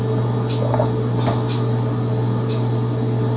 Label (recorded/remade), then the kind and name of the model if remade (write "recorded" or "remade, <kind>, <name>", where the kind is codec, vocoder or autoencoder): recorded